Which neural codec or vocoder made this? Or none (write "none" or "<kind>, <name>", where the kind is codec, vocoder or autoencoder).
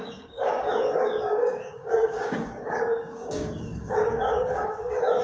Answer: codec, DAC